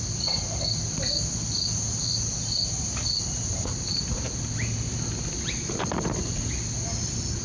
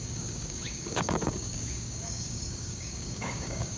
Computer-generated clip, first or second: second